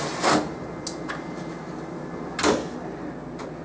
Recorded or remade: recorded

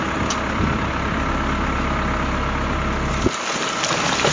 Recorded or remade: recorded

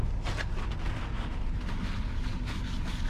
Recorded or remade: recorded